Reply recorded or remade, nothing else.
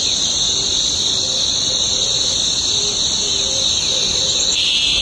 recorded